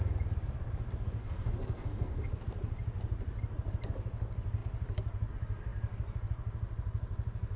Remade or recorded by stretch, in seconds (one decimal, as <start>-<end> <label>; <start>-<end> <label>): 0.0-1.2 recorded; 1.2-2.4 remade; 2.4-7.6 recorded